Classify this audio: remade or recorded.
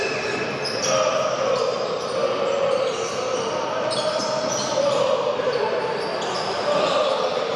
remade